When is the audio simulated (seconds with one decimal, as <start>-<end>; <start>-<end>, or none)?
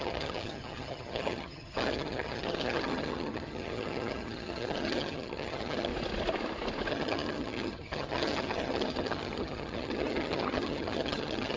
0.0-5.9; 6.9-11.6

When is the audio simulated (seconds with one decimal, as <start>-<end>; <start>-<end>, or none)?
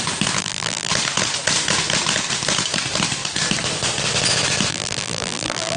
0.4-0.9; 4.7-5.8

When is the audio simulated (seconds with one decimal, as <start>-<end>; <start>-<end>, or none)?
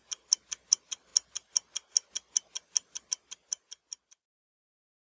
none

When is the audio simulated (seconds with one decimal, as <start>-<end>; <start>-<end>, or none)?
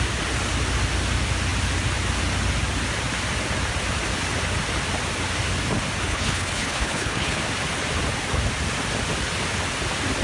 6.1-7.4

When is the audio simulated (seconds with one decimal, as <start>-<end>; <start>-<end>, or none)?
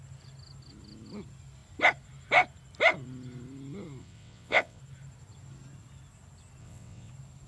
4.0-4.8; 6.6-7.1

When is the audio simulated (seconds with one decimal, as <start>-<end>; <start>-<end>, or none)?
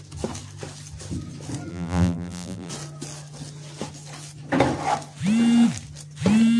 1.7-2.7